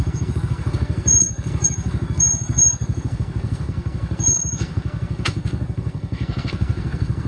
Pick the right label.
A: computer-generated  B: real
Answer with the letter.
A